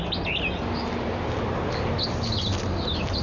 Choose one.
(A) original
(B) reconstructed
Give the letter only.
A